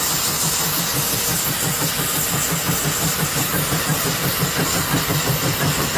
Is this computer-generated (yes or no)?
no